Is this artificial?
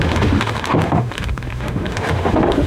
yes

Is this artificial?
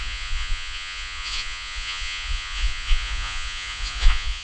yes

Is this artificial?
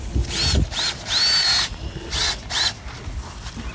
no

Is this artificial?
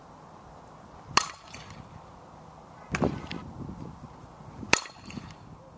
no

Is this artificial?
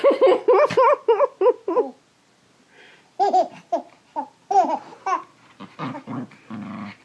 no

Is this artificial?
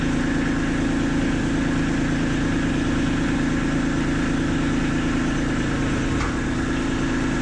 no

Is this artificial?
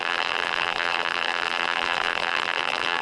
yes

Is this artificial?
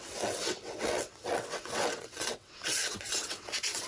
yes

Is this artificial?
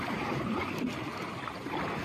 no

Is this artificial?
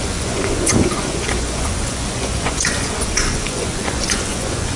yes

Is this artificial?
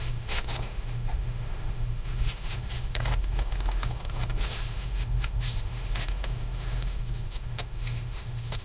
yes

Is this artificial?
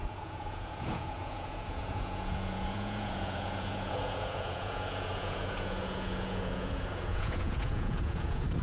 yes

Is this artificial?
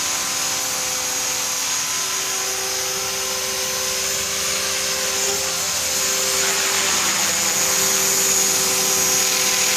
no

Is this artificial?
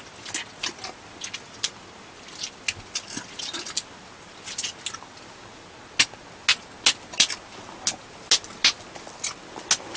no